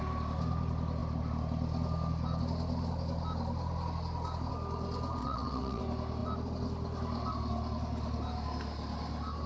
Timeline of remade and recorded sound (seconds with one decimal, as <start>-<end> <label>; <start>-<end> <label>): 0.0-5.2 recorded; 5.2-5.8 remade; 5.8-9.5 recorded

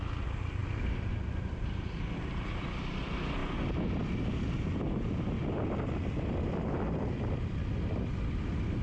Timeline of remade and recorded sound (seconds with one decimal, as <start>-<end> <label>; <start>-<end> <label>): 0.0-3.4 remade; 3.4-4.7 recorded; 4.7-8.8 remade

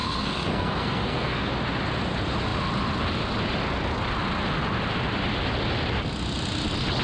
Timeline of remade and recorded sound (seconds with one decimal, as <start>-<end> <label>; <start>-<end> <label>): 0.0-1.5 remade; 1.5-7.0 recorded